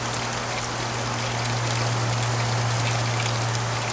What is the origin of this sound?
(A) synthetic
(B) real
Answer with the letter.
B